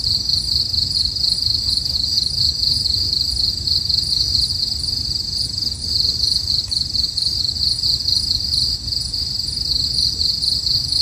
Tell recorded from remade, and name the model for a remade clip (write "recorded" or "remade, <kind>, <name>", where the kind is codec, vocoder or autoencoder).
recorded